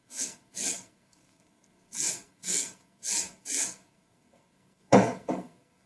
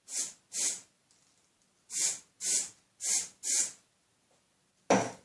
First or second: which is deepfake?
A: first